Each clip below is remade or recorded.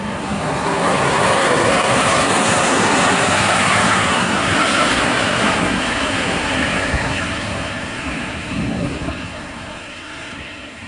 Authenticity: remade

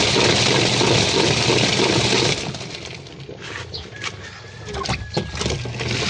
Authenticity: recorded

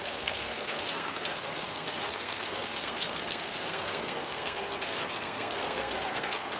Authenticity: remade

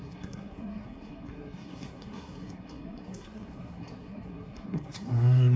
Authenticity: remade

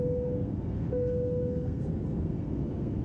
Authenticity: remade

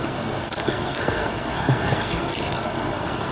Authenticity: remade